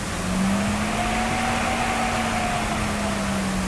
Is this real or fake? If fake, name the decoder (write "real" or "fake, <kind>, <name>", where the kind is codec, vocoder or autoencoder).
real